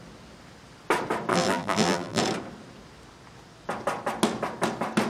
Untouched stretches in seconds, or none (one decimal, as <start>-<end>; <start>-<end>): 0.0-1.3; 2.2-5.1